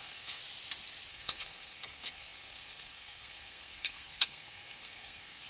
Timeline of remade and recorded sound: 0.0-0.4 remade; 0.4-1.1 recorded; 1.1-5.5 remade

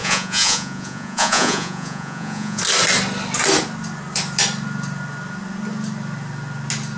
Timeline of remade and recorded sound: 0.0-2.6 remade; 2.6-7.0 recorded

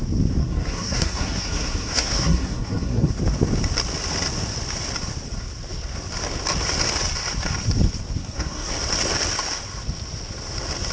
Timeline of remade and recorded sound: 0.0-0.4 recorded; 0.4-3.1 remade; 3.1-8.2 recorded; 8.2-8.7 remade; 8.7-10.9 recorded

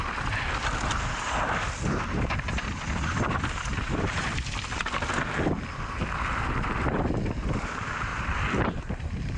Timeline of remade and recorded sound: 0.0-8.1 recorded; 8.1-8.9 remade; 8.9-9.4 recorded

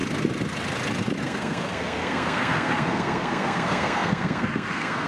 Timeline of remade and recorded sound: 0.0-1.2 recorded; 1.2-5.1 remade

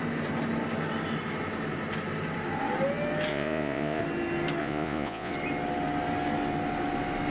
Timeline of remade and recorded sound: 0.0-3.3 recorded; 3.3-4.0 remade; 4.0-4.6 recorded; 4.6-5.3 remade; 5.3-7.3 recorded

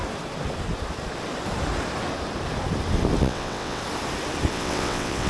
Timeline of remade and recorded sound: 0.0-3.2 recorded; 3.2-3.8 remade; 3.8-4.5 recorded; 4.5-5.3 remade

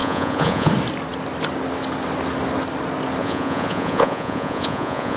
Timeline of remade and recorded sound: 0.0-0.7 remade; 0.7-3.2 recorded; 3.2-5.2 remade